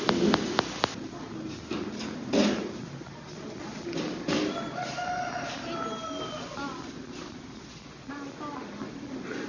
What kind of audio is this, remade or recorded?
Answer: recorded